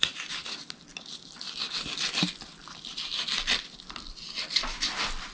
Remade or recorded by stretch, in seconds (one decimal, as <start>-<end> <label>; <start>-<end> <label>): 0.0-5.3 recorded